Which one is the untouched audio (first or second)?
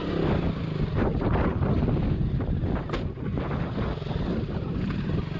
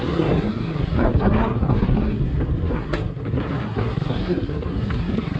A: first